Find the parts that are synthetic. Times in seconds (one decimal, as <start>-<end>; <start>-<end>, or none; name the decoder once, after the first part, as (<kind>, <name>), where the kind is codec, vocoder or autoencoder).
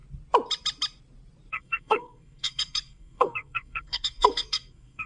1.5-5.1 (codec, SNAC)